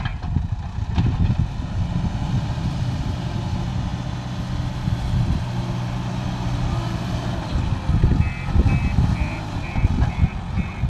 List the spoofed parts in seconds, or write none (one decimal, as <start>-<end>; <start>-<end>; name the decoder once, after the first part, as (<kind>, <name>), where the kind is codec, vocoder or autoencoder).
none